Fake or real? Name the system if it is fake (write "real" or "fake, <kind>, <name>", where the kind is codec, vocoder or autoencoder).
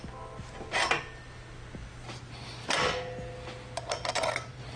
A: real